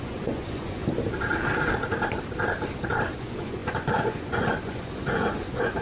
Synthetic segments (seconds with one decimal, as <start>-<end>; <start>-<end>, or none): 0.0-0.8; 3.1-5.8